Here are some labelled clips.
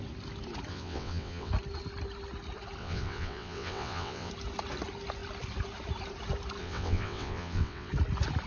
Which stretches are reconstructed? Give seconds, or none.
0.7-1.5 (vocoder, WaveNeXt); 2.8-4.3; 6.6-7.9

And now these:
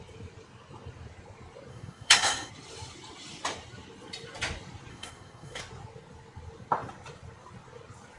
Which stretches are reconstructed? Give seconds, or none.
1.7-2.5 (codec, SNAC); 4.9-5.6

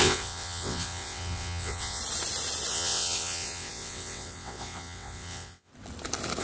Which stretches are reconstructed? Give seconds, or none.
0.0-2.0 (vocoder, WaveNeXt); 2.7-5.7

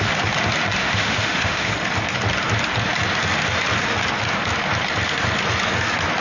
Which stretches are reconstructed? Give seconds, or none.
0.8-1.7 (autoencoder, DAC-VAE)